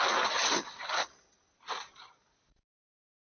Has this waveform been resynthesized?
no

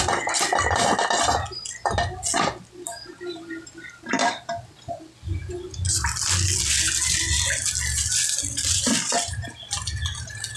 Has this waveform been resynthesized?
no